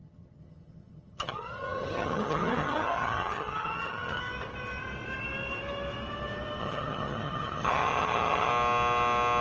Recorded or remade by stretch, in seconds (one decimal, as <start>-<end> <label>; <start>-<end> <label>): 0.0-4.2 remade; 4.2-6.6 recorded; 6.6-8.5 remade; 8.5-9.4 recorded